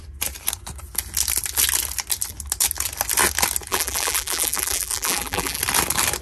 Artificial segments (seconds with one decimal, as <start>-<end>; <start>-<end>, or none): 3.7-5.6